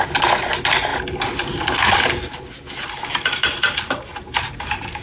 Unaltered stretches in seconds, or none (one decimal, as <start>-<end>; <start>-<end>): 0.0-5.0